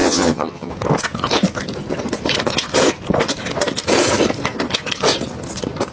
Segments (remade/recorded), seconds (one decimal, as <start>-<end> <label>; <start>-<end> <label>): 0.0-0.7 remade; 0.7-5.9 recorded